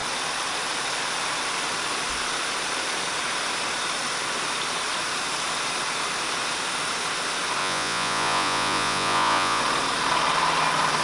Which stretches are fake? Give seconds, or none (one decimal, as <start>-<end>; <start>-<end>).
7.6-9.6